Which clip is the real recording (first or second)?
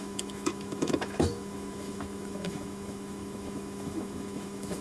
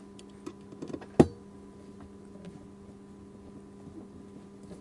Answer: second